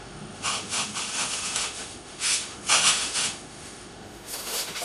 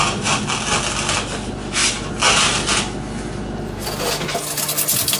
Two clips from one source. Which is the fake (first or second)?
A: first